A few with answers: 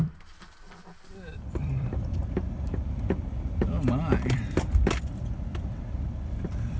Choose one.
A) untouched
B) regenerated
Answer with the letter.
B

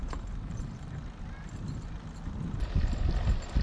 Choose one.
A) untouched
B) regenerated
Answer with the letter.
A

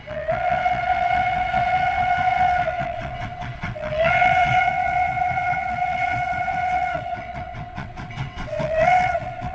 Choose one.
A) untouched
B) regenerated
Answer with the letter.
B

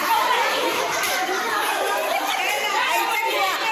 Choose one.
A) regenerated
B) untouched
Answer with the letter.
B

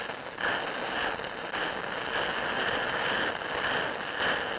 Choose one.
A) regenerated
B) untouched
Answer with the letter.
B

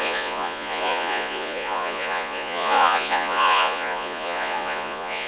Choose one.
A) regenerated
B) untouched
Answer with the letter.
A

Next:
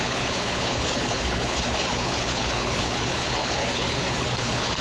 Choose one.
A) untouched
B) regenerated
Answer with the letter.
B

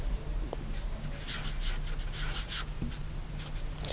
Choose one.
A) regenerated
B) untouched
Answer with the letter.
B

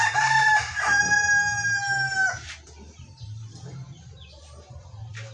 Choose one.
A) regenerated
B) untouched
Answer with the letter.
A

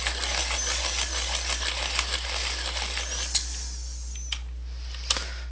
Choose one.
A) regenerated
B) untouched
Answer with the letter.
B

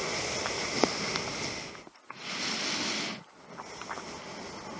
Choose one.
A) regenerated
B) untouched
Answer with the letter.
B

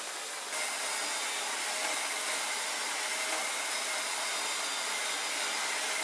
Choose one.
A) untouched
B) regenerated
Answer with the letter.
A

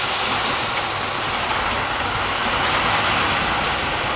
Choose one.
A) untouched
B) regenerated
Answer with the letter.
A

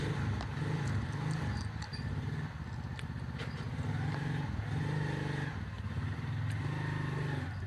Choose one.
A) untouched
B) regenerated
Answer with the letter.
A